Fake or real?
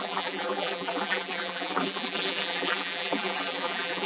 fake